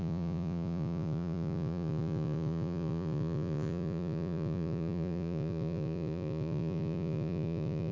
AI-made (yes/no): yes